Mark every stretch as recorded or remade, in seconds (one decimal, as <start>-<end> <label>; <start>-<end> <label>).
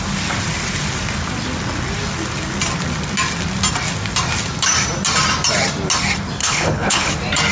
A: 0.0-6.4 recorded; 6.4-7.1 remade; 7.1-7.5 recorded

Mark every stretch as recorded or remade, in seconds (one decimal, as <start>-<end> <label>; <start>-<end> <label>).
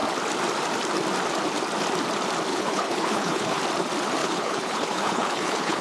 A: 0.0-2.5 recorded; 2.5-3.6 remade; 3.6-4.2 recorded; 4.2-5.8 remade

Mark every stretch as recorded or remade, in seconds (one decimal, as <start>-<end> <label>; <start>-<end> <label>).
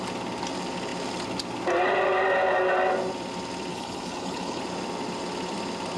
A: 0.0-3.7 recorded; 3.7-4.6 remade; 4.6-6.0 recorded